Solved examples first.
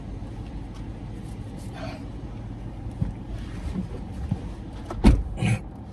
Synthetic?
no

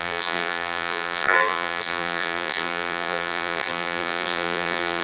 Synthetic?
yes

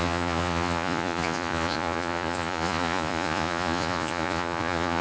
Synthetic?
yes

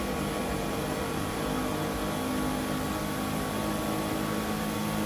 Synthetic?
no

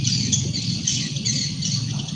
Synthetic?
no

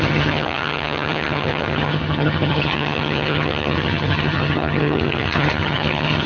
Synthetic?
yes